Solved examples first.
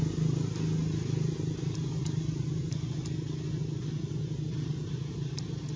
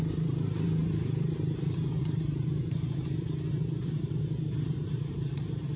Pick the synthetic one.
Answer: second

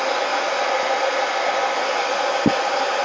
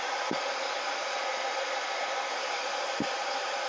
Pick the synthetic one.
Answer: second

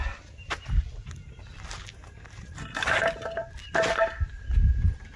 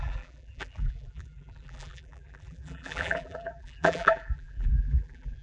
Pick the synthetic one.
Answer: second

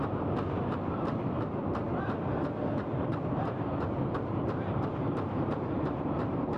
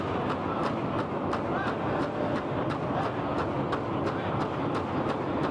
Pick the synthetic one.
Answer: first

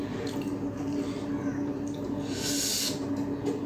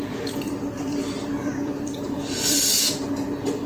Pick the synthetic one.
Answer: second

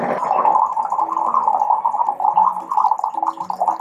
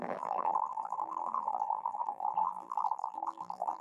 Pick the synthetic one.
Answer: second